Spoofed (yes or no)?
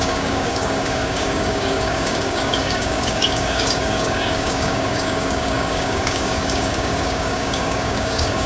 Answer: yes